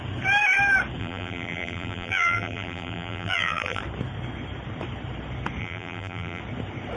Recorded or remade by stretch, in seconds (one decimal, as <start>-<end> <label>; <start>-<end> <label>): 0.0-1.0 recorded; 1.0-3.8 remade; 3.8-5.6 recorded; 5.6-6.4 remade; 6.4-7.0 recorded